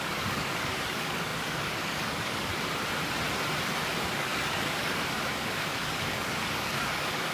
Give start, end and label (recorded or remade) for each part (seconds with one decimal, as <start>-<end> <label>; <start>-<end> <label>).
0.0-2.5 remade; 2.5-3.9 recorded; 3.9-7.3 remade